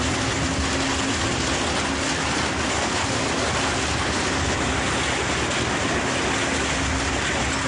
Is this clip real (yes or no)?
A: yes